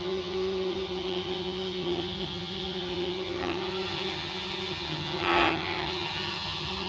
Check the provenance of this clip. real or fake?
fake